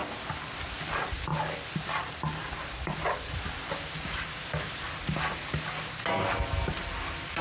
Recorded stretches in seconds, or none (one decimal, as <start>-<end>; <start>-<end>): 0.0-7.4